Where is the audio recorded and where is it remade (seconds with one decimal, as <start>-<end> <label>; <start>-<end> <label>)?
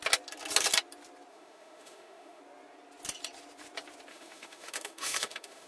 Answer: 0.0-1.3 recorded; 1.3-2.4 remade; 2.4-4.1 recorded; 4.1-5.7 remade